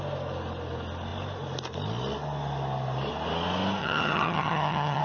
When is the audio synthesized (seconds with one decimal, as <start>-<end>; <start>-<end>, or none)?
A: 3.8-5.0